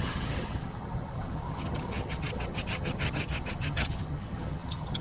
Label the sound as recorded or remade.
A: remade